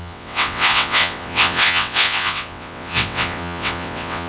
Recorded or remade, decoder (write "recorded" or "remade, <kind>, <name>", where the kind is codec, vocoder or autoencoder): remade, vocoder, WaveNeXt